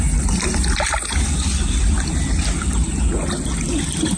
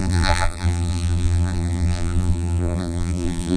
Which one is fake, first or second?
second